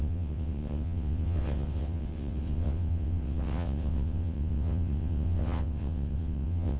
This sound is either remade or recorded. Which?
remade